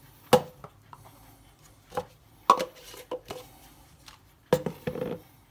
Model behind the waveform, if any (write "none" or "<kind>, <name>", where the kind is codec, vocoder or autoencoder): none